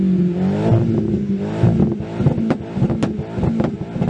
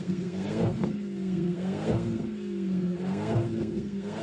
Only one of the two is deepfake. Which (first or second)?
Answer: second